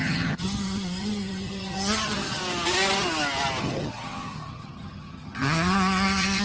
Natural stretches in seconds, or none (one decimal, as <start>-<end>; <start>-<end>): 2.4-3.6